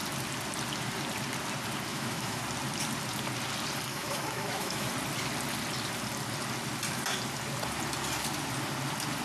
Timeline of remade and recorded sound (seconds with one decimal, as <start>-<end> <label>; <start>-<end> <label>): 0.0-1.9 recorded; 1.9-2.4 remade; 2.4-3.9 recorded; 3.9-4.9 remade; 4.9-9.2 recorded